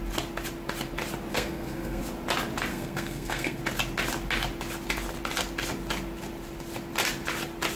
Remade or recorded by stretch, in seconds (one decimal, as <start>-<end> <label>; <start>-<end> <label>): 0.0-1.3 recorded; 1.3-2.0 remade; 2.0-2.7 recorded; 2.7-3.6 remade; 3.6-7.8 recorded